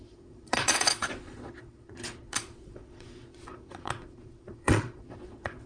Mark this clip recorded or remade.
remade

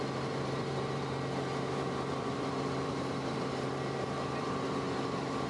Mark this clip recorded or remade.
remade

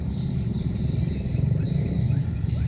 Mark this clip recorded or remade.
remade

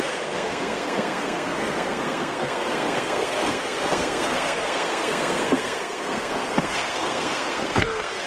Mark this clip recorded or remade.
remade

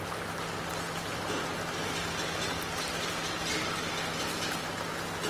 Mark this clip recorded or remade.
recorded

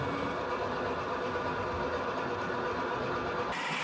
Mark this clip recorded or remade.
recorded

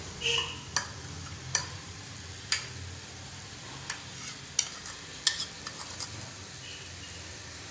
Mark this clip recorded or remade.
recorded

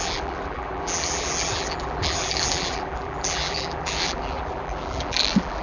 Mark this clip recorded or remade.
remade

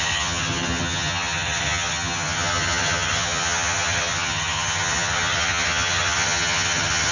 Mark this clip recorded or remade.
remade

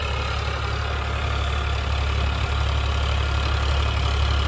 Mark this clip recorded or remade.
recorded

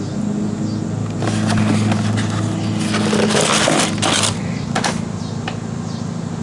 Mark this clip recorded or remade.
recorded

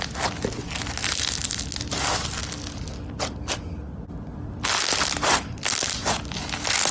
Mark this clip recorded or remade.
recorded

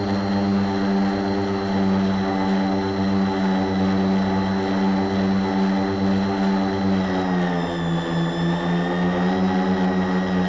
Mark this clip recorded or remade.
recorded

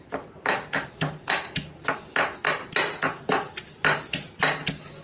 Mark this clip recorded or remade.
recorded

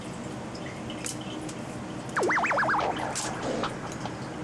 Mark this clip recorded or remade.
recorded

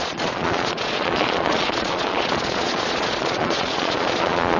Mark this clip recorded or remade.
remade